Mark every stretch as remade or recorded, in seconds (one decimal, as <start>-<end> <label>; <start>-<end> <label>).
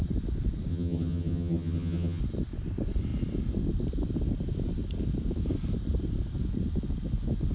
0.0-0.7 recorded; 0.7-2.2 remade; 2.2-7.5 recorded